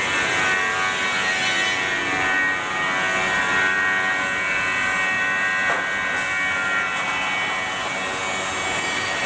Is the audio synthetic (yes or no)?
no